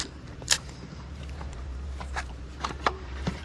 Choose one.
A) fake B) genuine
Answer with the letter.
A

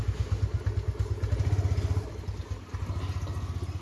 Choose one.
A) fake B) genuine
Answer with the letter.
B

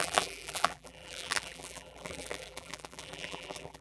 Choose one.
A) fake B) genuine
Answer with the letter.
A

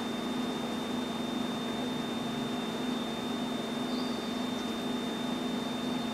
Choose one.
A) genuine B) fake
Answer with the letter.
A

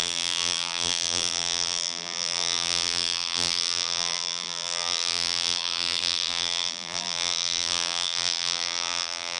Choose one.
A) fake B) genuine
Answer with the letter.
A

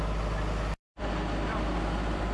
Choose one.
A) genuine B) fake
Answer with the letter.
B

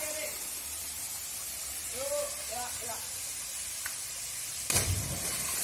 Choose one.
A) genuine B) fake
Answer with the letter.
B